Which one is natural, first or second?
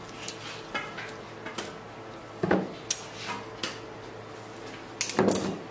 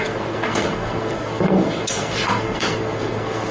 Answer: first